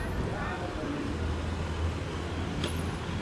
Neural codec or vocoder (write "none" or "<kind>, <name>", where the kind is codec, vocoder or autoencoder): none